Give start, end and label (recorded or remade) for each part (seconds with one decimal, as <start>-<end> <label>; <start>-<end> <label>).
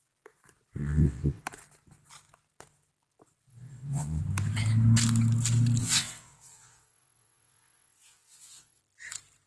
0.0-0.8 recorded; 0.8-1.4 remade; 1.4-3.5 recorded; 3.5-4.2 remade; 4.2-5.8 recorded; 5.8-8.8 remade; 8.8-9.5 recorded